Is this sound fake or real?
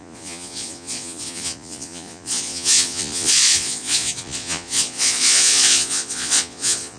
fake